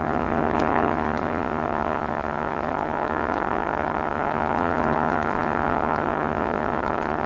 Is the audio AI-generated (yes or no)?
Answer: yes